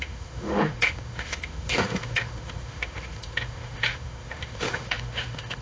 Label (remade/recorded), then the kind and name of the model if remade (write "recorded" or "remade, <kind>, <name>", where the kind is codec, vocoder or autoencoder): remade, autoencoder, DAC-VAE